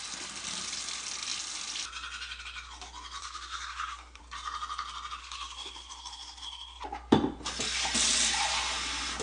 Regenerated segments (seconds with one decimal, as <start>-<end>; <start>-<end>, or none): 3.2-4.2; 5.2-6.8